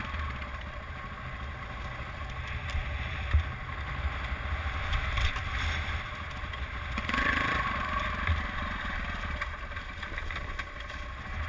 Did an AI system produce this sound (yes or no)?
no